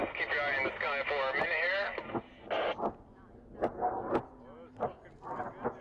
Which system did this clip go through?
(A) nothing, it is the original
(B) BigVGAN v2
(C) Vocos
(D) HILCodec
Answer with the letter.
A